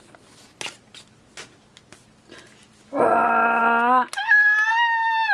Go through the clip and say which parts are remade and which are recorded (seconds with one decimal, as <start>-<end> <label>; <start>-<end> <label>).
0.0-5.3 recorded